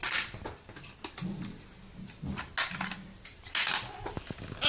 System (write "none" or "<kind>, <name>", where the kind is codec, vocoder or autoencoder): none